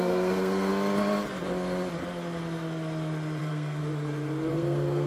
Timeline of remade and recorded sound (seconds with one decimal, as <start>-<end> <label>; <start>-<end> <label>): 0.0-0.7 remade; 0.7-3.4 recorded; 3.4-3.8 remade; 3.8-4.5 recorded; 4.5-5.1 remade